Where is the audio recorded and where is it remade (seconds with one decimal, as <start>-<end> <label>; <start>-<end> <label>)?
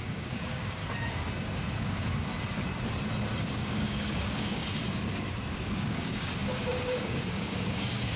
0.0-0.8 remade; 0.8-1.8 recorded; 1.8-2.3 remade; 2.3-3.4 recorded; 3.4-4.7 remade; 4.7-5.5 recorded; 5.5-8.2 remade